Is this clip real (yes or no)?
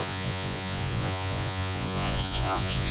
no